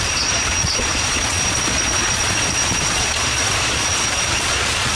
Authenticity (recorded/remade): remade